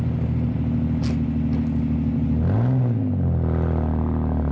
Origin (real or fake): real